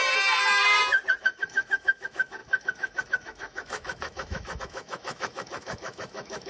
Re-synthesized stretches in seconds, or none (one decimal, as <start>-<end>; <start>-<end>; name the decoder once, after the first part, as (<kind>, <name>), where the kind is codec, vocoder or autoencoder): 1.2-6.5 (autoencoder, DAC-VAE)